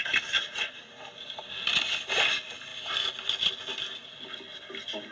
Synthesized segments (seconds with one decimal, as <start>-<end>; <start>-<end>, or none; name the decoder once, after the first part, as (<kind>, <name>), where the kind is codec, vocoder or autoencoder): none

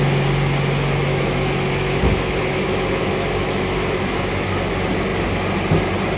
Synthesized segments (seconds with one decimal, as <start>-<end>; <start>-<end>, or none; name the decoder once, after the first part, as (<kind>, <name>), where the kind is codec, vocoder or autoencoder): 1.1-4.6 (autoencoder, DAC-VAE)

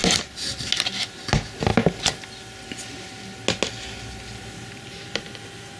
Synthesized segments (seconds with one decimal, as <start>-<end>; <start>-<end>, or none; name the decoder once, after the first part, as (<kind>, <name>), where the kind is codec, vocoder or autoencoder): none

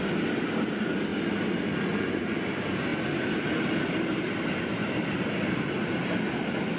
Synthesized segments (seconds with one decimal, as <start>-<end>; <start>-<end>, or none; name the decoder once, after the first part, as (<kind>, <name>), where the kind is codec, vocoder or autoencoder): none

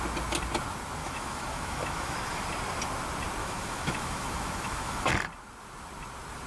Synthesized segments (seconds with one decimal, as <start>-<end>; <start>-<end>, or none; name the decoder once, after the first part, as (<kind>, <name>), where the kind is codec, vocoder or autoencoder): 1.0-2.4 (autoencoder, DAC-VAE); 3.4-5.1

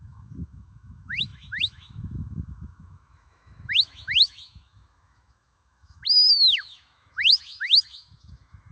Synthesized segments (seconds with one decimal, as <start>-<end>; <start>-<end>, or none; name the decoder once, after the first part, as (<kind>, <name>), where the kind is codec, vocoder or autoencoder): 0.0-8.7 (autoencoder, DAC-VAE)